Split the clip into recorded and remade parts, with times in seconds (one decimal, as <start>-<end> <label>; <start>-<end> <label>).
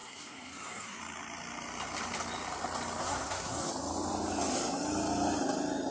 0.0-1.0 remade; 1.0-3.0 recorded; 3.0-3.7 remade; 3.7-5.9 recorded